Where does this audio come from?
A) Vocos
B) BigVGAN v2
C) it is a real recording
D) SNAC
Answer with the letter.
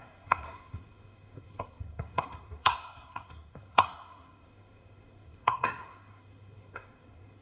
D